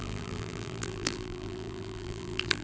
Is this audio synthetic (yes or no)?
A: yes